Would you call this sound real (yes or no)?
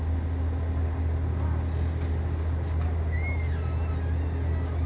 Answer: yes